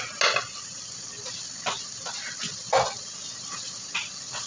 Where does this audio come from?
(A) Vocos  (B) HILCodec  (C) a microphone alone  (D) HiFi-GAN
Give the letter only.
C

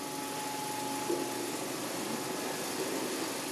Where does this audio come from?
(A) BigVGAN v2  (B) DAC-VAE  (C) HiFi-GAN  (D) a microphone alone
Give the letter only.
D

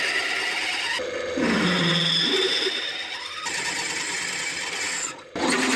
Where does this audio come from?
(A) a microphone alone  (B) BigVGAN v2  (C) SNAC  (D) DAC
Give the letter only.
A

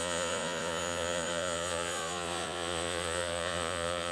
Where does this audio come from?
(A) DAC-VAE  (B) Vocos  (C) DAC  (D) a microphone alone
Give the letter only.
B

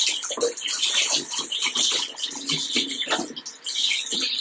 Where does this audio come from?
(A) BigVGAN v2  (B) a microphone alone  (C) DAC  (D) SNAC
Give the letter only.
B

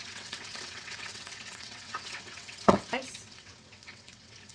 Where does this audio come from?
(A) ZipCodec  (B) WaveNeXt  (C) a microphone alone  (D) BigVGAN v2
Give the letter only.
B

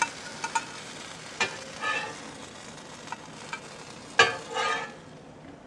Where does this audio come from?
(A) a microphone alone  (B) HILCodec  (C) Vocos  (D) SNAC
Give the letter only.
A